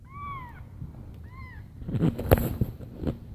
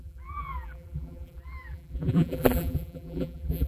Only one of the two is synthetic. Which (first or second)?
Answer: second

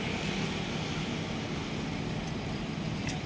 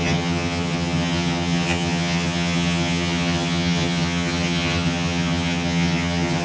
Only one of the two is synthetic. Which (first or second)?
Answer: second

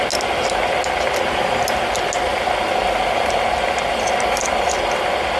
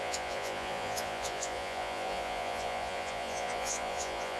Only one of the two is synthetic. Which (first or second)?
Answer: second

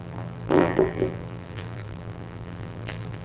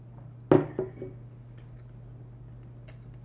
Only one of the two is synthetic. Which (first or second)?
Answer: first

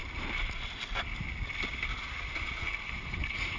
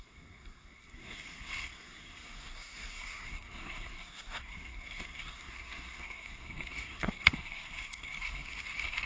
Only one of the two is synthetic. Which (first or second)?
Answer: second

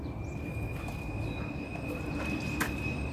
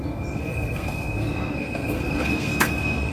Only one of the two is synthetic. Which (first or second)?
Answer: second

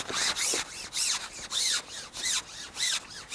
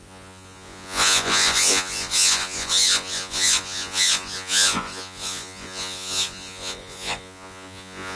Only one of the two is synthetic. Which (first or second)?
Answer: second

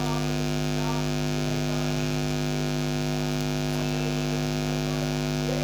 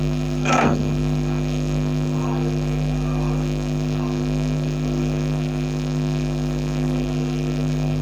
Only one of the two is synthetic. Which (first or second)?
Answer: second